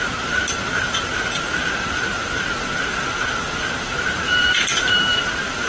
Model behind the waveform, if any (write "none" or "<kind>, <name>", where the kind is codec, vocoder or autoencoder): vocoder, BigVGAN v2